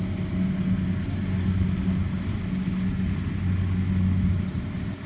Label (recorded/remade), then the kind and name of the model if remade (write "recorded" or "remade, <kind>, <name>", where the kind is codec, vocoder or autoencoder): recorded